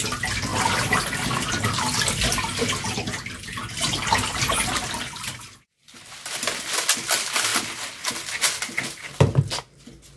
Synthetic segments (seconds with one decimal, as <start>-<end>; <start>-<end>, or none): none